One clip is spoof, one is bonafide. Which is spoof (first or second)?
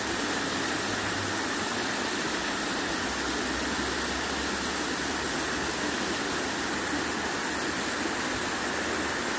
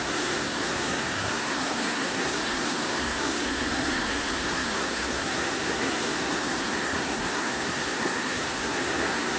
second